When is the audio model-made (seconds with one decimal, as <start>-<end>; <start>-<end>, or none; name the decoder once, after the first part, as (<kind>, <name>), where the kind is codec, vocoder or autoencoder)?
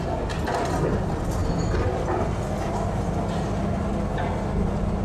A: none